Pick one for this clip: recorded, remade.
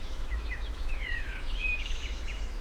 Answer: remade